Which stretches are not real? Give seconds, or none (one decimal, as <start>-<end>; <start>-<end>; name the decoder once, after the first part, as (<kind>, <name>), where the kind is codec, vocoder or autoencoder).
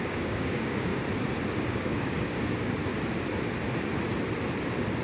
0.0-0.9 (codec, DAC); 1.7-2.8